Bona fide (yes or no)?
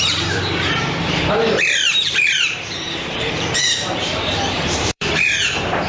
no